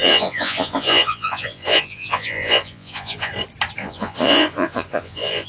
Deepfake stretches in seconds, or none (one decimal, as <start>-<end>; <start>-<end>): 0.0-3.3; 3.8-5.5